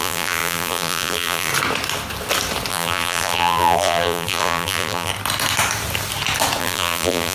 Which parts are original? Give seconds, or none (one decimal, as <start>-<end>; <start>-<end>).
1.5-2.7; 5.1-6.6